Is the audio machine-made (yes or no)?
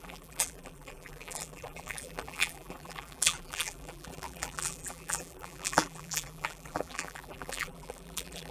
yes